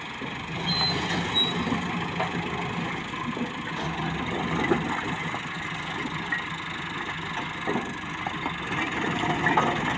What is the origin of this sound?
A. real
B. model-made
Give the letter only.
A